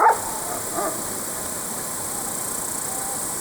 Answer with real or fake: real